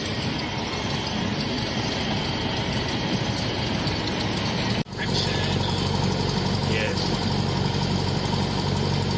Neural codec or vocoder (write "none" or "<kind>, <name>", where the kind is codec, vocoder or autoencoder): none